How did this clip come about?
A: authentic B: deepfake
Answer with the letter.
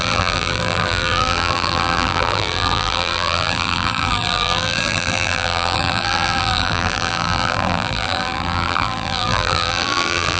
B